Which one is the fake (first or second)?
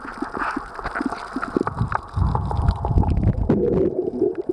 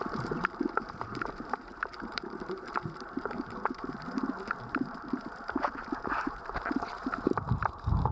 second